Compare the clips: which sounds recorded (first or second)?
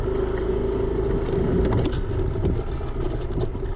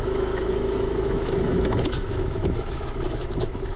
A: first